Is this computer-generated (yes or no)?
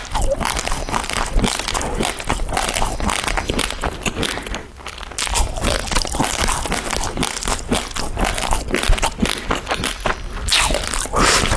no